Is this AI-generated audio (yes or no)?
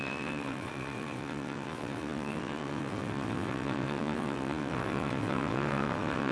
yes